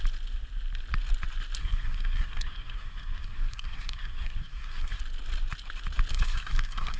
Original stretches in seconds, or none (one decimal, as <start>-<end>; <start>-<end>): 0.0-1.6; 5.0-6.1